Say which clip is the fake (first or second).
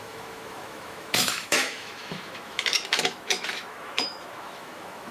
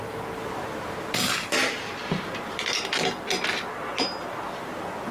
first